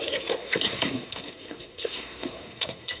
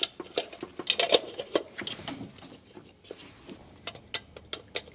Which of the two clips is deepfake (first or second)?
first